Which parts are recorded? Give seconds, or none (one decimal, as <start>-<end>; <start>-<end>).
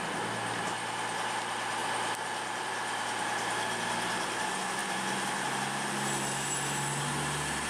0.0-7.7